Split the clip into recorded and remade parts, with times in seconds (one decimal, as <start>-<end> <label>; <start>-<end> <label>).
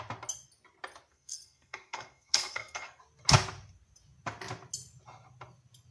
0.0-1.1 recorded; 1.1-3.0 remade; 3.0-5.9 recorded